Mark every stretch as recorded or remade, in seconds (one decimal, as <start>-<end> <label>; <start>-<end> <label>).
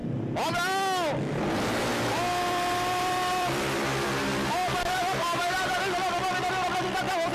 0.0-1.9 recorded; 1.9-5.8 remade; 5.8-7.3 recorded